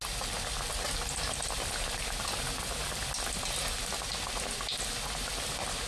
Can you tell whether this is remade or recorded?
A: recorded